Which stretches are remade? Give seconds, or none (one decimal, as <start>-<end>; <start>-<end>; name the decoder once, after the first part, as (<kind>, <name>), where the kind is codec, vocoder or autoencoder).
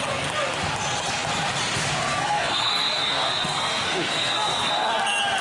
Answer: 2.1-4.7 (codec, SNAC)